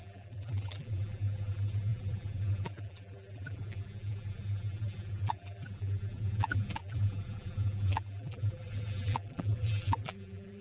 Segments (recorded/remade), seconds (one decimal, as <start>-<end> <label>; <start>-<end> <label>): 0.0-10.6 remade